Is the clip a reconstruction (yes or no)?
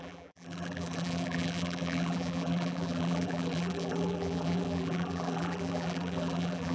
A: yes